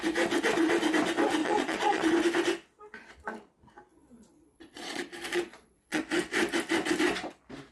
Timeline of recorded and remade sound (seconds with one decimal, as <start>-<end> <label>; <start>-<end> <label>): 0.0-1.4 recorded; 1.4-2.1 remade; 2.1-3.9 recorded; 3.9-6.0 remade; 6.0-7.7 recorded